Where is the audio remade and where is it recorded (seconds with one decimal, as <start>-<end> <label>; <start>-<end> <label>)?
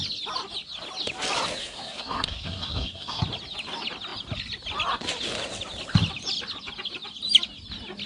0.0-1.6 recorded; 1.6-3.2 remade; 3.2-8.1 recorded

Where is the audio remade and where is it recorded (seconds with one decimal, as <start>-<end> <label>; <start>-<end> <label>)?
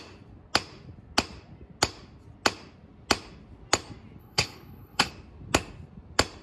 0.0-4.2 recorded; 4.2-5.1 remade; 5.1-6.4 recorded